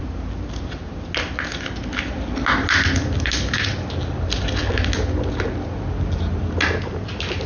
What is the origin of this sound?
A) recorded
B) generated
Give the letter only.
A